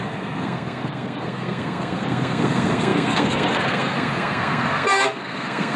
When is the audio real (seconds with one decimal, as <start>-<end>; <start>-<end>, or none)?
none